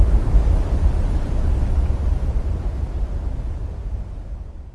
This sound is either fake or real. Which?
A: fake